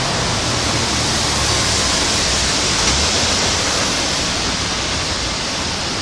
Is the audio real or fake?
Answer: fake